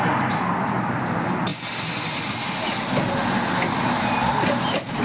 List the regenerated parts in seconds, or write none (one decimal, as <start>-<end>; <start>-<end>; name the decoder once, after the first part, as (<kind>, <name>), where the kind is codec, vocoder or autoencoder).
none